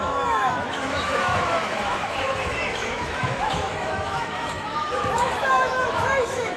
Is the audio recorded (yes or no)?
no